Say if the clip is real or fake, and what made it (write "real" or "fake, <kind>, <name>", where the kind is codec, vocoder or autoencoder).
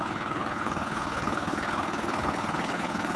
fake, codec, HILCodec